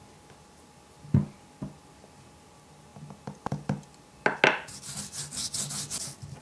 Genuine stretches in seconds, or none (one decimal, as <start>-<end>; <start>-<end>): 0.0-6.4